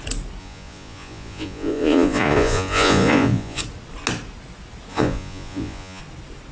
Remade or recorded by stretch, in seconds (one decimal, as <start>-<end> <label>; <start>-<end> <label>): 0.0-0.4 recorded; 0.4-3.6 remade; 3.6-4.9 recorded; 4.9-6.0 remade; 6.0-6.5 recorded